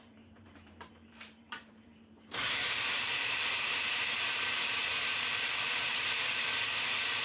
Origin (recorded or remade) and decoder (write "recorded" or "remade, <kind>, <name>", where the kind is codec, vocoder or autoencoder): remade, vocoder, BigVGAN v2